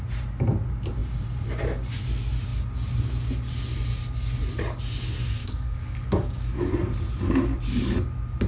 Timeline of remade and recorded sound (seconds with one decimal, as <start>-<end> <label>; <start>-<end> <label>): 0.0-5.4 recorded; 5.4-6.7 remade; 6.7-8.5 recorded